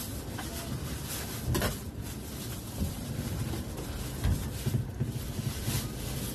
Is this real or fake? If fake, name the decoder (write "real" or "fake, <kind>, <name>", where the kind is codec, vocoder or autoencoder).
real